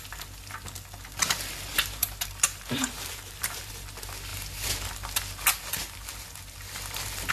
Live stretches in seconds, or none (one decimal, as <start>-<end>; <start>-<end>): 0.0-1.7; 3.7-7.3